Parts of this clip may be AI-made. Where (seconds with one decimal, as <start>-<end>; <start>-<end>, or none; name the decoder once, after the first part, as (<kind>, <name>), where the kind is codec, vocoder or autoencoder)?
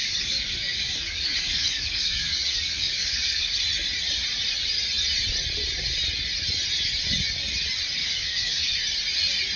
0.0-3.5 (codec, DAC); 8.0-8.7